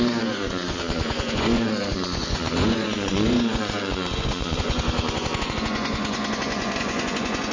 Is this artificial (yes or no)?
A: yes